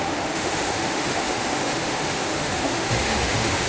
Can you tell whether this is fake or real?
fake